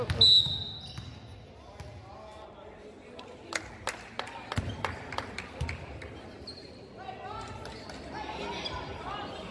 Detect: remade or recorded recorded